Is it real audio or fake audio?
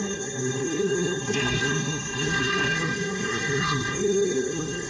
fake